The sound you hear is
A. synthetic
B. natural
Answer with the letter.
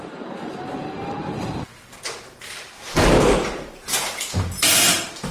A